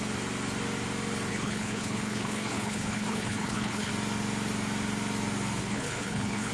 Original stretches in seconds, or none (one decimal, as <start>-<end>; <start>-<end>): 0.0-1.3; 3.9-5.6